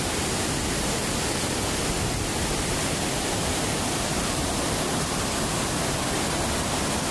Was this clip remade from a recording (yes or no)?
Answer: no